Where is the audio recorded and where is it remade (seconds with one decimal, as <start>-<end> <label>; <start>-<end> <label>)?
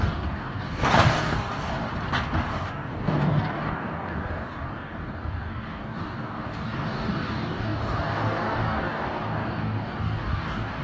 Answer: 0.0-1.9 remade; 1.9-2.5 recorded; 2.5-10.8 remade